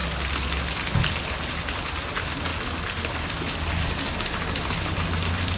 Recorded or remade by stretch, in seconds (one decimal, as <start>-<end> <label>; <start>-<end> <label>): 0.0-5.6 recorded